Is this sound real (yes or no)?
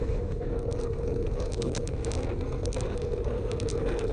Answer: no